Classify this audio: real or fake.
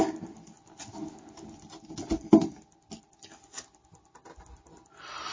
real